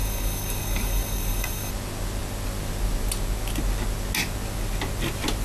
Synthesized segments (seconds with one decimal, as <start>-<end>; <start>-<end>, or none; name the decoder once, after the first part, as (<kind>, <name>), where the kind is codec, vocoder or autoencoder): 0.0-1.7 (codec, DAC)